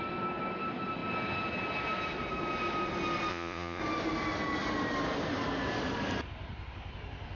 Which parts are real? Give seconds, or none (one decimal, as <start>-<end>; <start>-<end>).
0.0-3.3; 3.8-7.4